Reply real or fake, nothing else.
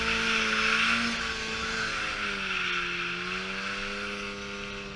real